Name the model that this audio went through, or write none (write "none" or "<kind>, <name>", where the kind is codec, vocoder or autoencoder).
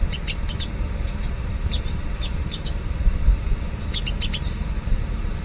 vocoder, BigVGAN v2